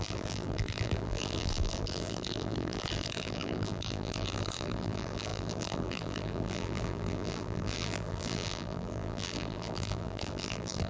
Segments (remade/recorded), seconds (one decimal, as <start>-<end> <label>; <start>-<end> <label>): 0.0-10.9 remade